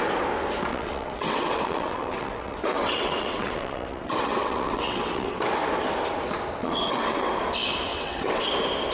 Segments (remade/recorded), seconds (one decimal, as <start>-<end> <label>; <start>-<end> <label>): 0.0-0.7 recorded; 0.7-5.4 remade; 5.4-6.6 recorded; 6.6-7.3 remade; 7.3-7.9 recorded; 7.9-8.4 remade; 8.4-8.9 recorded

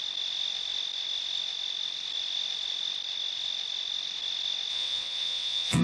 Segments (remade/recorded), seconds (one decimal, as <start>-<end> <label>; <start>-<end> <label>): 0.0-4.7 recorded; 4.7-5.8 remade

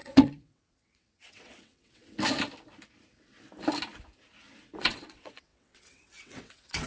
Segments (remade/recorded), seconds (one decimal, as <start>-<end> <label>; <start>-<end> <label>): 0.0-2.0 remade; 2.0-4.8 recorded; 4.8-6.9 remade